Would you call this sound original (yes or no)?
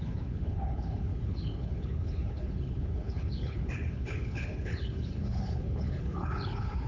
no